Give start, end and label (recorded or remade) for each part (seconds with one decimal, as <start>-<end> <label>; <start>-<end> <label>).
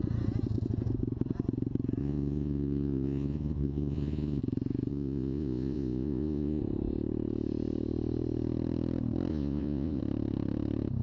0.0-2.0 recorded; 2.0-4.4 remade; 4.4-4.9 recorded; 4.9-6.6 remade; 6.6-9.3 recorded; 9.3-10.0 remade; 10.0-11.0 recorded